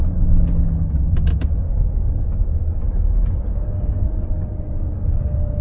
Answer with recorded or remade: recorded